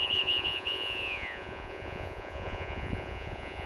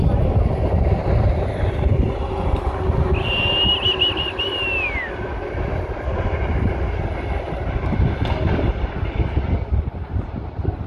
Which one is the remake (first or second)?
first